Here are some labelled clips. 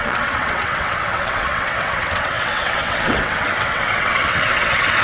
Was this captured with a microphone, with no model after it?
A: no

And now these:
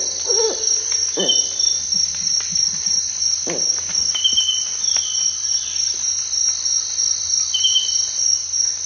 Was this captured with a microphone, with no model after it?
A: yes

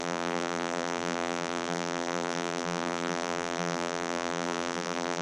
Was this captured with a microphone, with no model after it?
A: no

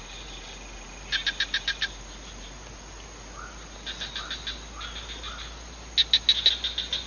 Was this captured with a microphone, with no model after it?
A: yes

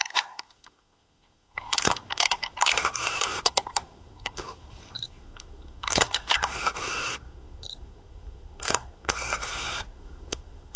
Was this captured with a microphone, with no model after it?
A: no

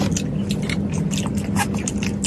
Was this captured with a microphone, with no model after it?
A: yes